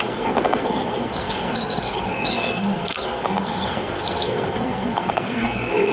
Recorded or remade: remade